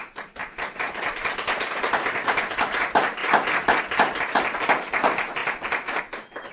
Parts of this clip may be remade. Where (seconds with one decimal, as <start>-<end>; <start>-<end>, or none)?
0.4-2.5; 5.4-6.0

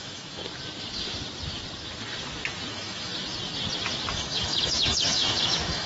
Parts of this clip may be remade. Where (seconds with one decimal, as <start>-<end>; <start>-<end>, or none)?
0.0-0.4; 2.7-3.1; 4.1-5.9

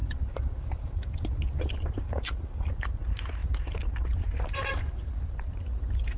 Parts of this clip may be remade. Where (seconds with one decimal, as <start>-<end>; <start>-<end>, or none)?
0.0-2.8; 3.4-6.2

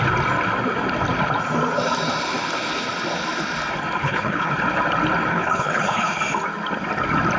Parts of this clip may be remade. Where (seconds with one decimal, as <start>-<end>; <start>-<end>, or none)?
4.0-4.5; 5.3-6.2

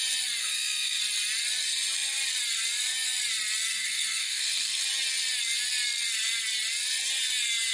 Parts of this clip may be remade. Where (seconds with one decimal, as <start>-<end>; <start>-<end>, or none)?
0.4-1.0; 3.7-4.8

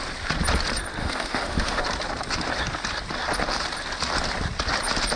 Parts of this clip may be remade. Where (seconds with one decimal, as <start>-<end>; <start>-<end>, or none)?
1.0-1.8